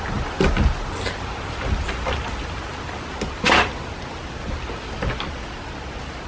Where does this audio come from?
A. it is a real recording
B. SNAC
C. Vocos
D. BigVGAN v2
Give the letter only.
A